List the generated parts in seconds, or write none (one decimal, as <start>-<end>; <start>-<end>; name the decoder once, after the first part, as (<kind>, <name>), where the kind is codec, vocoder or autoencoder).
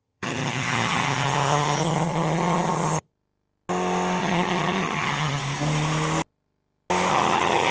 0.0-3.1 (vocoder, HiFi-GAN); 4.2-5.4; 7.1-7.7